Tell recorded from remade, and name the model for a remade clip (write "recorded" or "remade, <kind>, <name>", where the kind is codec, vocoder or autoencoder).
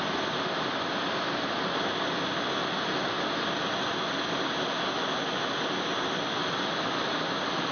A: recorded